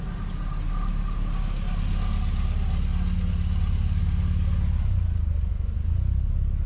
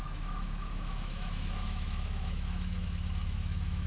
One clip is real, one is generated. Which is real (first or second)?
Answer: first